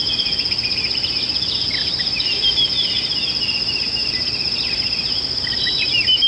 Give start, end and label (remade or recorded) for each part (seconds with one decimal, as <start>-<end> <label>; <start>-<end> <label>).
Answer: 0.0-4.0 recorded; 4.0-5.7 remade; 5.7-6.3 recorded